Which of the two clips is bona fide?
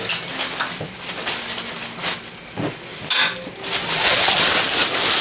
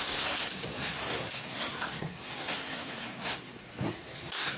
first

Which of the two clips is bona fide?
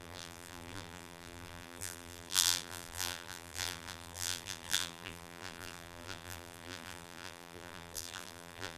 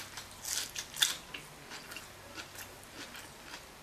second